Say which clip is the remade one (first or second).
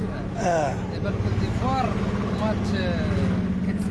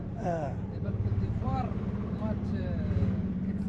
second